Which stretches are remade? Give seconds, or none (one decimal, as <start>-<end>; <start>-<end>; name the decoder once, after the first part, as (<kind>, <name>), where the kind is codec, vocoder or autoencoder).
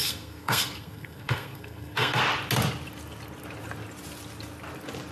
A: 0.0-2.2 (codec, SNAC)